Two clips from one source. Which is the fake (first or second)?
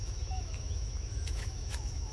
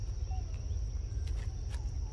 first